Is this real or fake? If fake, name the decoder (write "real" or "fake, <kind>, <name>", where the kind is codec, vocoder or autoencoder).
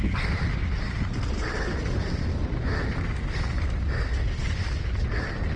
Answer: real